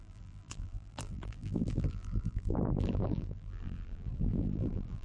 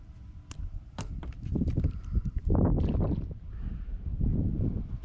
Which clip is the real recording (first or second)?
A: second